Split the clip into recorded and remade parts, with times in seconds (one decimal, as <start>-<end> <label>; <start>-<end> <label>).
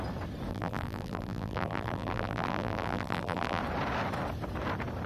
0.0-0.5 recorded; 0.5-3.6 remade; 3.6-5.1 recorded